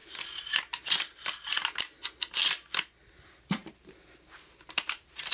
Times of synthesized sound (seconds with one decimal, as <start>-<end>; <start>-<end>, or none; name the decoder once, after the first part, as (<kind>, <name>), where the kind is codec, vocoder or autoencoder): 3.6-5.3 (vocoder, BigVGAN v2)